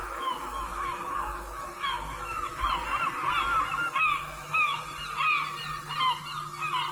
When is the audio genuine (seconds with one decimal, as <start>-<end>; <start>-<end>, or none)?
2.7-4.2; 4.8-6.9